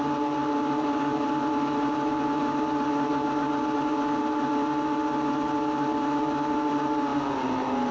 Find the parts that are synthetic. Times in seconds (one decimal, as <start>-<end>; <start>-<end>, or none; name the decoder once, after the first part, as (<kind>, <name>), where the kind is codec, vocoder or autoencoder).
none